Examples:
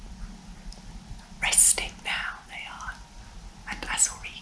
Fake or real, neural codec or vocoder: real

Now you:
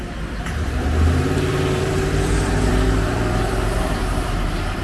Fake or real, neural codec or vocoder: fake, vocoder, BigVGAN v2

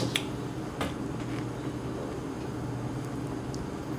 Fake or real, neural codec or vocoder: real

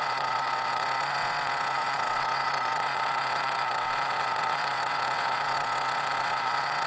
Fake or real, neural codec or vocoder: fake, vocoder, WaveNeXt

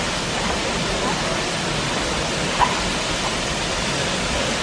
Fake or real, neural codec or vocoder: real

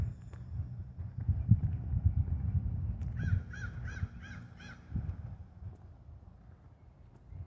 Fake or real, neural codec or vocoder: real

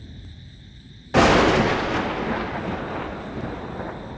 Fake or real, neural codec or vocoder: real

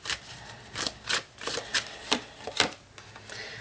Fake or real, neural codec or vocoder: real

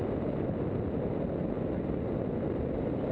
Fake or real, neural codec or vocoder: real